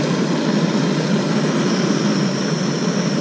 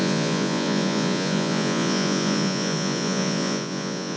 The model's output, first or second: second